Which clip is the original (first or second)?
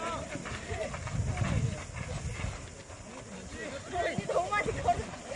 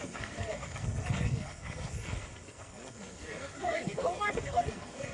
first